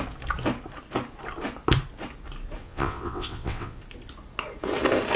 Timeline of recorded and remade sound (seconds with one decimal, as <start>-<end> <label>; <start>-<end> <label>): 0.0-2.6 recorded; 2.6-3.8 remade; 3.8-5.2 recorded